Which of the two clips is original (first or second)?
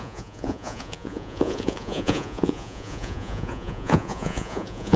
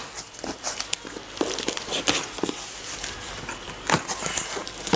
second